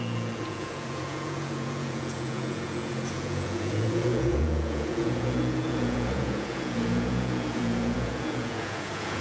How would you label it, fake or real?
fake